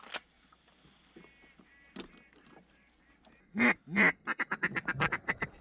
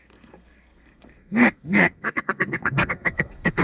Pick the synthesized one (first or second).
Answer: second